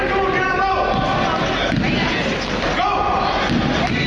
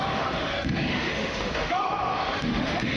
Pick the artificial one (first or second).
second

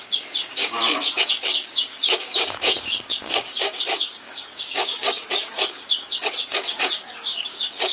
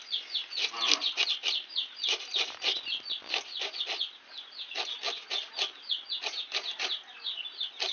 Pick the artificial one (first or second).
first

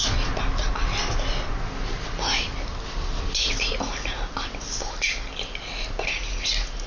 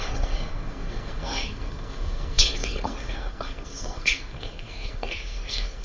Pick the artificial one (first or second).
second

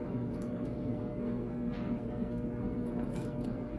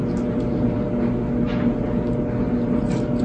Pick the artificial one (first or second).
first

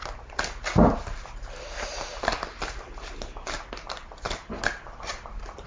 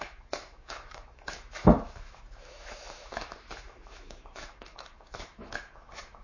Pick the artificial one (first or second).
second